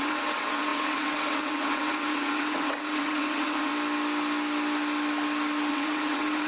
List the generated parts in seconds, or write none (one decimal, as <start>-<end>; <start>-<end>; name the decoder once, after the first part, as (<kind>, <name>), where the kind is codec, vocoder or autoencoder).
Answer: 0.0-3.7 (vocoder, WaveNeXt); 5.7-6.5

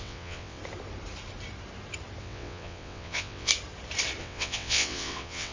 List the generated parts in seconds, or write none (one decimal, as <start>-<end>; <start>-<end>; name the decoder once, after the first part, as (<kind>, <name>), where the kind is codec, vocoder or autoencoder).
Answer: 0.0-0.6 (vocoder, WaveNeXt); 2.2-3.5; 4.2-5.5

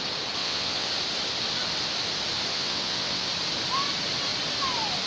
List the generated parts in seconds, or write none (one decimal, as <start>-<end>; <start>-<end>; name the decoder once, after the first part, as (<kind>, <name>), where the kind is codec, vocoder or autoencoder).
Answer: 0.4-0.9 (vocoder, WaveNeXt); 2.5-3.3

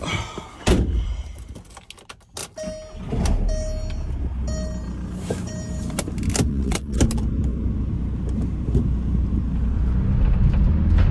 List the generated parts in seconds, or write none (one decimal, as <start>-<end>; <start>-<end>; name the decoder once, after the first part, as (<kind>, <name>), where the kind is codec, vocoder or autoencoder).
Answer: 6.5-7.0 (vocoder, WaveNeXt)

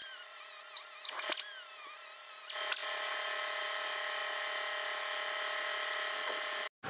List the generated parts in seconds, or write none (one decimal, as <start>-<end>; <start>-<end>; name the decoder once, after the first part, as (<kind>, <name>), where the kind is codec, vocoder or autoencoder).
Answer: none